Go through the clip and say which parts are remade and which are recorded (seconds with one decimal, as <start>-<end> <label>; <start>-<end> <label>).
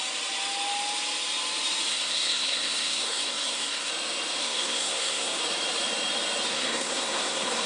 0.0-1.9 recorded; 1.9-3.9 remade; 3.9-4.4 recorded; 4.4-5.4 remade; 5.4-6.5 recorded; 6.5-7.7 remade